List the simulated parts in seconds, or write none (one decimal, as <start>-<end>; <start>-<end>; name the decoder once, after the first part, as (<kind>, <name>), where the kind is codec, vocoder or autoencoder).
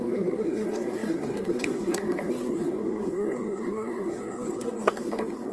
0.0-5.5 (codec, SNAC)